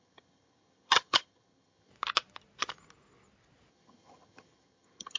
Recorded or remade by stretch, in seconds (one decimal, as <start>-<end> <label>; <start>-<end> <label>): 0.0-1.9 remade; 1.9-3.7 recorded; 3.7-5.2 remade